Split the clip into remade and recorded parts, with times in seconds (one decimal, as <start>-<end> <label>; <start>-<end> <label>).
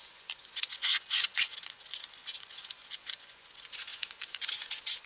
0.0-5.1 remade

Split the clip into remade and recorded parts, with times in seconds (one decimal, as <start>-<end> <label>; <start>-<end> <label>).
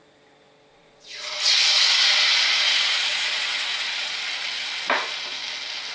0.0-0.7 recorded; 0.7-4.2 remade; 4.2-5.9 recorded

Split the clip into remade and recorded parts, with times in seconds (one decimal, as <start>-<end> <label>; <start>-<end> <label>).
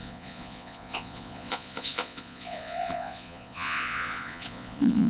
0.0-5.1 remade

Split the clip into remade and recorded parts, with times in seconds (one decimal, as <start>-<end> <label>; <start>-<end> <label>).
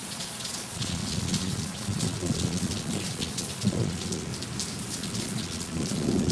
0.0-4.3 remade; 4.3-4.9 recorded; 4.9-6.3 remade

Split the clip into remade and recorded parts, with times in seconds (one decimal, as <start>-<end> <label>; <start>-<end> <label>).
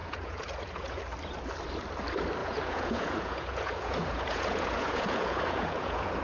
0.0-1.0 remade; 1.0-2.4 recorded; 2.4-6.2 remade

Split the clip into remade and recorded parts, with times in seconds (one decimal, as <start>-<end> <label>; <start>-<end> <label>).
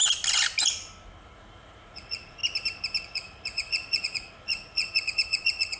0.0-1.2 recorded; 1.2-2.4 remade; 2.4-3.0 recorded; 3.0-5.8 remade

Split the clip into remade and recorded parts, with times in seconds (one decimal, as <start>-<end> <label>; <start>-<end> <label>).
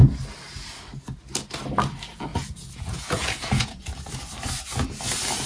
0.0-2.3 recorded; 2.3-3.8 remade; 3.8-5.5 recorded